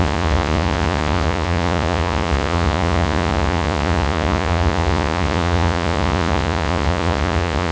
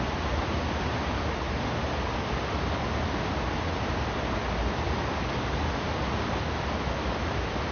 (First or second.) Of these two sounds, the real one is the second